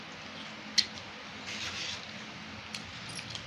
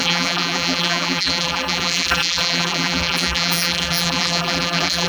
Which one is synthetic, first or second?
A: second